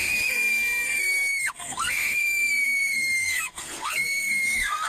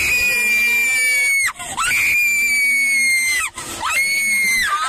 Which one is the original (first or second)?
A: second